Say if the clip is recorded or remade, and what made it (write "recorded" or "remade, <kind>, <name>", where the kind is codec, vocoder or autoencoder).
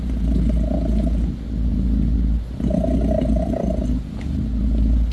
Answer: recorded